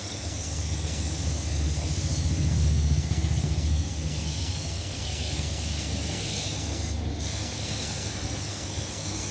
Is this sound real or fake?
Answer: fake